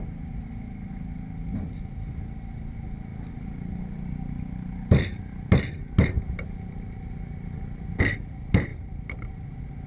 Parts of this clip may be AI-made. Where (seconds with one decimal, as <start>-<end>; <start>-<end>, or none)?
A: none